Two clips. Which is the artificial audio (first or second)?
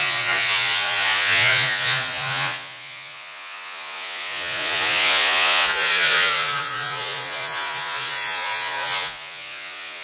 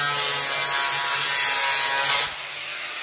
first